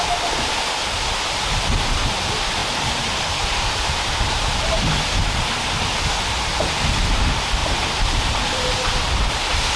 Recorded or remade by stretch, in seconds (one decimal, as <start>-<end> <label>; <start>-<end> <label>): 0.0-2.6 recorded; 2.6-4.9 remade; 4.9-7.6 recorded; 7.6-9.3 remade; 9.3-9.8 recorded